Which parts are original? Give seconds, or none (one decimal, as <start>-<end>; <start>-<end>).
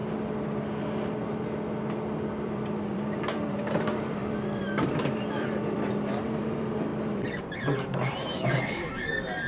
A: 0.0-2.3